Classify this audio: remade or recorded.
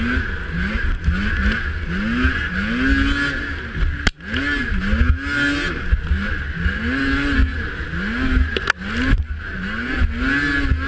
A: recorded